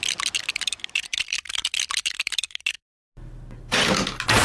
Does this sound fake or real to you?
real